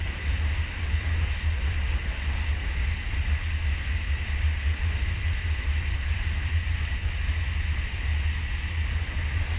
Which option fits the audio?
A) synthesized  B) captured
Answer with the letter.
B